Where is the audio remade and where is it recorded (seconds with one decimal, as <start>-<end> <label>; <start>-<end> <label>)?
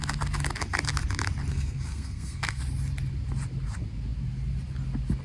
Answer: 0.0-1.5 recorded; 1.5-2.6 remade; 2.6-5.2 recorded